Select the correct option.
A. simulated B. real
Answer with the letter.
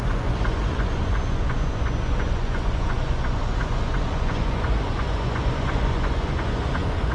A